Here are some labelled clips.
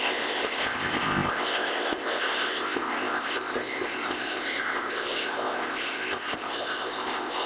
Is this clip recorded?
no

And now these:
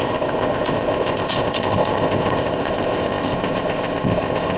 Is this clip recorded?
no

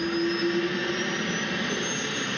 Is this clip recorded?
yes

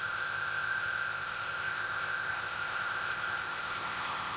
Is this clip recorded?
no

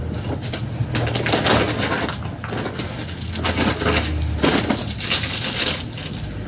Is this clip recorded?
yes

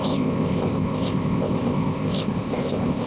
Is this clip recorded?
no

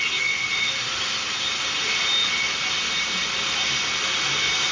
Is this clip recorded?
yes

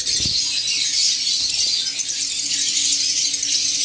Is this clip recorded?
yes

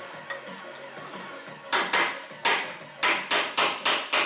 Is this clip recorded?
yes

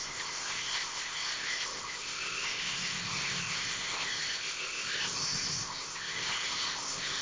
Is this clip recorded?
no